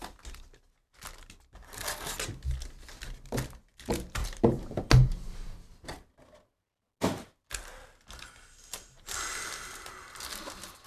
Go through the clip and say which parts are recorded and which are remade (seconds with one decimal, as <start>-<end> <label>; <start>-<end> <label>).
0.0-4.2 recorded; 4.2-4.8 remade; 4.8-10.9 recorded